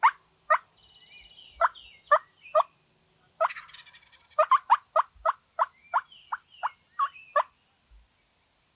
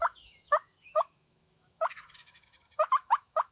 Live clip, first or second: first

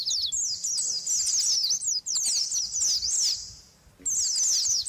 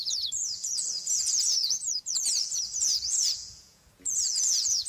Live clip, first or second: first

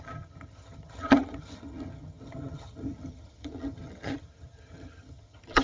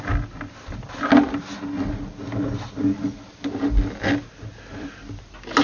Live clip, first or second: second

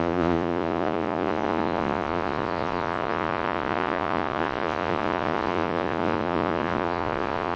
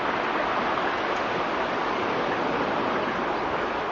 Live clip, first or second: second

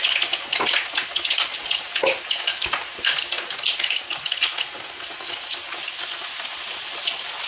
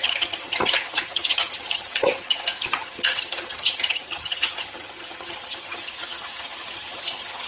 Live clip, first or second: first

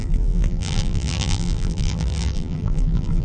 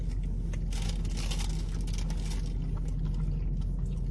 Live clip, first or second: second